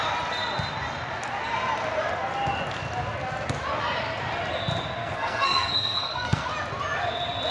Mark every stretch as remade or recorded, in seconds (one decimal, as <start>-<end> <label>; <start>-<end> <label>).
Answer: 0.0-5.0 recorded; 5.0-6.5 remade; 6.5-7.5 recorded